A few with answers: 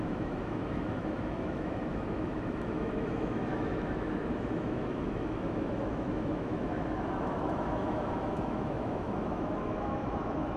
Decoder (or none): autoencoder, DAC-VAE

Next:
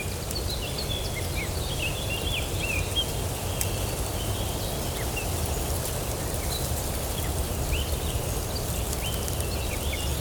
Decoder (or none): none